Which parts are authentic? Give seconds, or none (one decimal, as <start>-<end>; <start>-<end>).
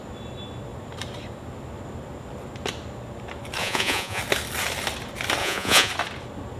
0.0-3.6; 4.2-5.4; 5.9-6.6